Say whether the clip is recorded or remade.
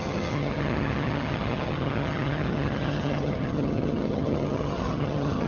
remade